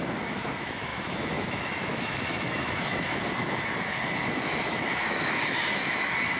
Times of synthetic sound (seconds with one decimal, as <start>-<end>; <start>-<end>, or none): 0.0-6.4